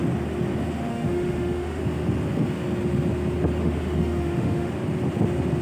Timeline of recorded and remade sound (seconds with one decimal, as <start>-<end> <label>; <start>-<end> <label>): 0.0-0.9 recorded; 0.9-1.8 remade; 1.8-3.6 recorded; 3.6-4.7 remade; 4.7-5.6 recorded